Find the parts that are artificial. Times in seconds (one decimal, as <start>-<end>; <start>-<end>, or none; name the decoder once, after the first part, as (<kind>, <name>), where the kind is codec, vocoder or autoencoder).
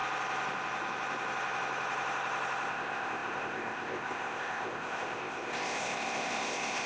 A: 2.7-6.9 (codec, ZipCodec)